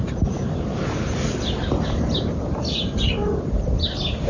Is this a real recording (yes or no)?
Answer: yes